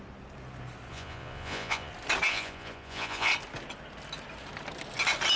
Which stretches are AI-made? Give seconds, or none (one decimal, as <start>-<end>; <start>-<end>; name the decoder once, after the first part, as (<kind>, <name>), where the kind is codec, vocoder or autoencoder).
0.9-1.9 (vocoder, Vocos); 2.3-3.3